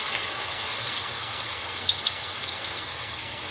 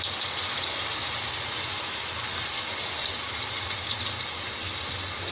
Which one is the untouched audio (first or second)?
second